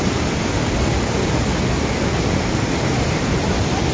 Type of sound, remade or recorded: recorded